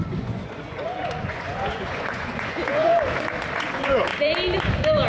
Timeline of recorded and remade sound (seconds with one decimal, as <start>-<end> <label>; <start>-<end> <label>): 0.0-2.9 remade; 2.9-3.5 recorded; 3.5-4.1 remade; 4.1-5.1 recorded